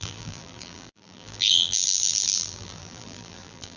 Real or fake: fake